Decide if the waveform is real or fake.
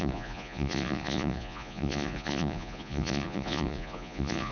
fake